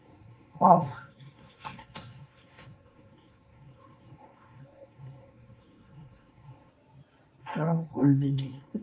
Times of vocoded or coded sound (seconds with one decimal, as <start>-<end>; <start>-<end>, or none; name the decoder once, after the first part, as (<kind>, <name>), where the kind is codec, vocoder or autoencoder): 0.0-6.7 (codec, SNAC); 7.4-8.8